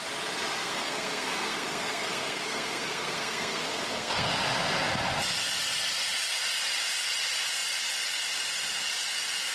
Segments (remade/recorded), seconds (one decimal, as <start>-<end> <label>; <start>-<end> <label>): 0.0-0.6 recorded; 0.6-4.3 remade; 4.3-9.5 recorded

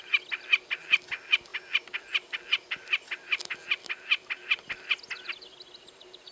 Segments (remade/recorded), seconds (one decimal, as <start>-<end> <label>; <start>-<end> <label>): 0.0-6.3 recorded

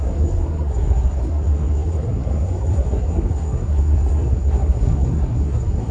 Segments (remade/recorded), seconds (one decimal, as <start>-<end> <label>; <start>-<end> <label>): 0.0-5.9 remade

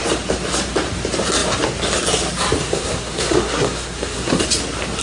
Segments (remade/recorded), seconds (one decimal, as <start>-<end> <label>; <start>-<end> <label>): 0.0-2.6 recorded; 2.6-4.4 remade; 4.4-5.0 recorded

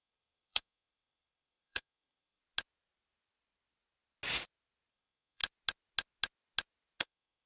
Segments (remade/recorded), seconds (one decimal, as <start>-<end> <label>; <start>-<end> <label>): 0.0-2.4 remade; 2.4-4.9 recorded; 4.9-5.4 remade; 5.4-7.0 recorded; 7.0-7.5 remade

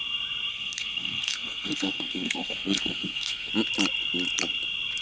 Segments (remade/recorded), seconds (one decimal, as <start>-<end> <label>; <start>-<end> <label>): 0.0-0.5 recorded; 0.5-3.5 remade; 3.5-5.0 recorded

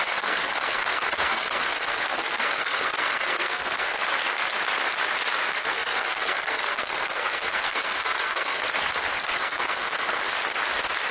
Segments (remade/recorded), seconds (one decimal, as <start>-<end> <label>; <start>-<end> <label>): 0.0-4.0 remade; 4.0-5.6 recorded; 5.6-8.6 remade; 8.6-9.2 recorded; 9.2-10.2 remade; 10.2-11.1 recorded

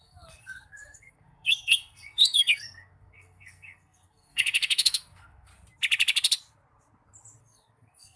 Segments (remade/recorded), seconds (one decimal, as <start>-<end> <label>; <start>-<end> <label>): 0.0-5.5 remade; 5.5-7.4 recorded; 7.4-8.2 remade